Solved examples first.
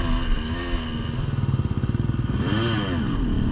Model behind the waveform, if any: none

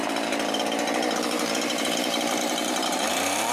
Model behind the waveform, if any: vocoder, BigVGAN v2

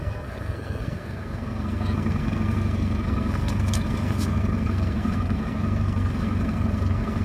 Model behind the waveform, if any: codec, SNAC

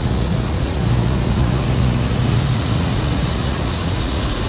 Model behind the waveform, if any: vocoder, Vocos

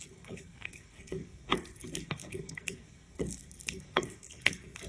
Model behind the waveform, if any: codec, SNAC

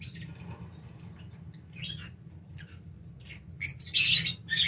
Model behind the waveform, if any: none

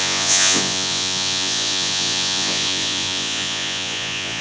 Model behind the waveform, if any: vocoder, Vocos